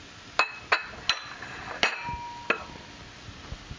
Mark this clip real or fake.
real